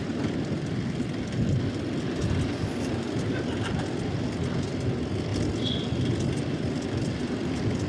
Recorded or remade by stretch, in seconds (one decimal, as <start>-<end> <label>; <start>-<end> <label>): 0.0-7.9 recorded